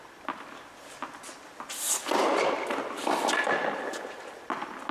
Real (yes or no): yes